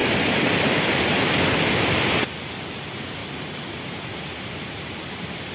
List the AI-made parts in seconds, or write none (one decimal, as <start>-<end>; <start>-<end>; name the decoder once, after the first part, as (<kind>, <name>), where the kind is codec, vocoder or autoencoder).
3.2-5.5 (vocoder, BigVGAN v2)